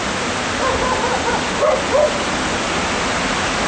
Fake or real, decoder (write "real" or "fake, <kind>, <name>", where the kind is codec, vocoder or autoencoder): real